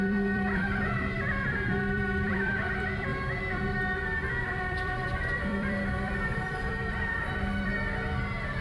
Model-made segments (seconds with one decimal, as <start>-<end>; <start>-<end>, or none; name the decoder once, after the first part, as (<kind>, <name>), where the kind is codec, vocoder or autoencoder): 0.0-3.1 (vocoder, BigVGAN v2); 4.4-7.7